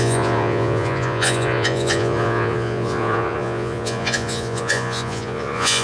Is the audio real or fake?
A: fake